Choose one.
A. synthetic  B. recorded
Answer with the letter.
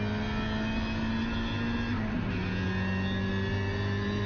B